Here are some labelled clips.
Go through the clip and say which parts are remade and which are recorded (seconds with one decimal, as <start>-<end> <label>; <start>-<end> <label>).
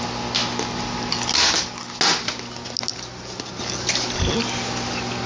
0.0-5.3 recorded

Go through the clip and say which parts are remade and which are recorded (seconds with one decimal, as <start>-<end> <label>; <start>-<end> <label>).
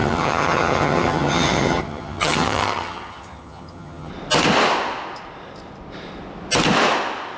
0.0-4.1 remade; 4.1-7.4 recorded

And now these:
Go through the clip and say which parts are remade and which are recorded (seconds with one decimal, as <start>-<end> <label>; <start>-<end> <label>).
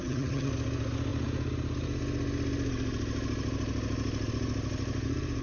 0.0-0.5 remade; 0.5-5.4 recorded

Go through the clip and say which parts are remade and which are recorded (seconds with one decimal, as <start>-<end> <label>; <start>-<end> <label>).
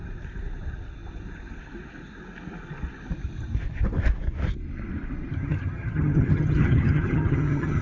0.0-5.3 recorded; 5.3-7.8 remade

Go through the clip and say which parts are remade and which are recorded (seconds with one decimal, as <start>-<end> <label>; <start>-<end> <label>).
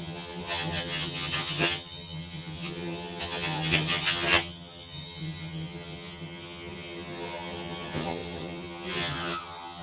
0.0-9.8 remade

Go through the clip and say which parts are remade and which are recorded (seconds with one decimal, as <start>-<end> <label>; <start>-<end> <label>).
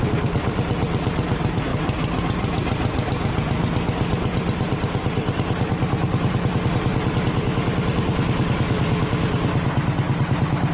0.0-10.7 recorded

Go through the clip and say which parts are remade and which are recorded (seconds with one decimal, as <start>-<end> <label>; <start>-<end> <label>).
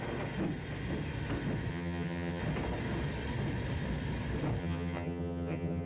0.0-1.7 recorded; 1.7-2.4 remade; 2.4-4.6 recorded; 4.6-5.9 remade